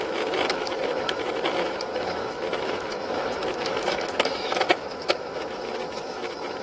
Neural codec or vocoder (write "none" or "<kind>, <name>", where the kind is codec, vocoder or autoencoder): autoencoder, DAC-VAE